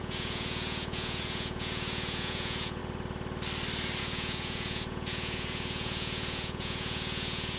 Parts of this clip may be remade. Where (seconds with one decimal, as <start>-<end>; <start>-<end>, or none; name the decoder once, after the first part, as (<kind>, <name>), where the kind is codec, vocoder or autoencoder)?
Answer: 0.0-2.8 (vocoder, Vocos); 4.0-7.6